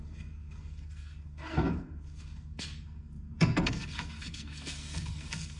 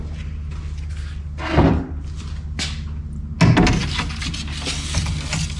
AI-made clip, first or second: first